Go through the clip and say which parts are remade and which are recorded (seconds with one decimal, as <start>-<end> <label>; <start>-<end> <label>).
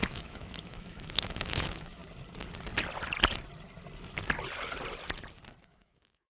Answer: 0.0-2.0 remade; 2.0-5.6 recorded; 5.6-6.3 remade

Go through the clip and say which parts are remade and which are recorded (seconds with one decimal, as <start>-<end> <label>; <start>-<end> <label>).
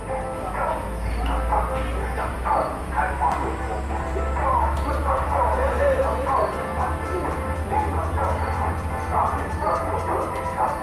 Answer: 0.0-2.3 recorded; 2.3-6.0 remade; 6.0-9.2 recorded; 9.2-10.0 remade; 10.0-10.8 recorded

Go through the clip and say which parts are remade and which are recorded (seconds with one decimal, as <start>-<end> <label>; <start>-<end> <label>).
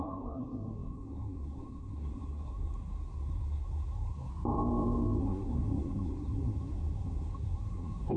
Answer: 0.0-4.3 remade; 4.3-5.2 recorded; 5.2-8.2 remade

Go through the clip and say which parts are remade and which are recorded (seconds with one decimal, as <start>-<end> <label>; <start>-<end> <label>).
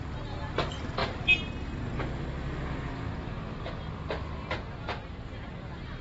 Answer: 0.0-6.0 recorded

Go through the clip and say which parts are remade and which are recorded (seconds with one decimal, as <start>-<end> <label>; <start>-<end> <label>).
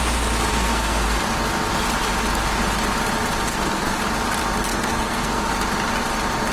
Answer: 0.0-0.5 recorded; 0.5-1.2 remade; 1.2-3.5 recorded; 3.5-4.0 remade; 4.0-4.7 recorded; 4.7-5.5 remade; 5.5-6.5 recorded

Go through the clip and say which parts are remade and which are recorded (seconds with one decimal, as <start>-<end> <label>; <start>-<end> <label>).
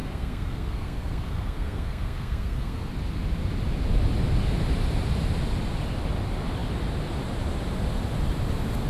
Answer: 0.0-2.9 remade; 2.9-8.9 recorded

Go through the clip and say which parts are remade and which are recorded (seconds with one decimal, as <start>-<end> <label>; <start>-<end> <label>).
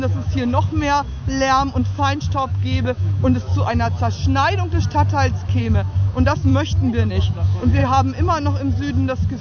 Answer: 0.0-1.3 remade; 1.3-1.8 recorded; 1.8-3.5 remade; 3.5-5.6 recorded; 5.6-6.5 remade; 6.5-7.1 recorded; 7.1-7.8 remade; 7.8-9.4 recorded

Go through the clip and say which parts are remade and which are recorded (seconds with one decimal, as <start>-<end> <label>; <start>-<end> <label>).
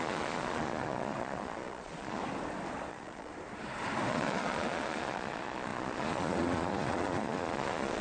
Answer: 0.0-2.2 remade; 2.2-2.9 recorded; 2.9-3.3 remade; 3.3-4.1 recorded; 4.1-8.0 remade